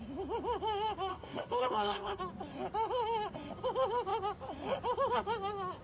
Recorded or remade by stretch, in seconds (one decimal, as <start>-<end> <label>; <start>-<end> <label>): 0.0-1.1 recorded; 1.1-2.2 remade; 2.2-5.8 recorded